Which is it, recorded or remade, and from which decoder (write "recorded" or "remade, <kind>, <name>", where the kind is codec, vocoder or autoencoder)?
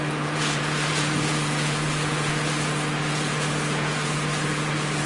remade, vocoder, Vocos